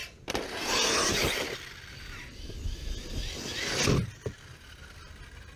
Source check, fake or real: real